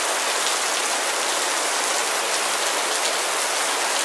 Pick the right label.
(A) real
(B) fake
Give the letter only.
A